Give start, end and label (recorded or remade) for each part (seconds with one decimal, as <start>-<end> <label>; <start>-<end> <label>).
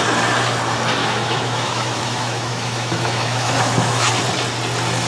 0.0-1.0 recorded; 1.0-4.1 remade; 4.1-5.1 recorded